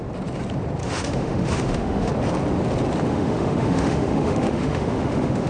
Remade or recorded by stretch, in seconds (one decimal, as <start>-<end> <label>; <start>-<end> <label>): 0.0-0.8 recorded; 0.8-2.1 remade; 2.1-3.1 recorded; 3.1-5.5 remade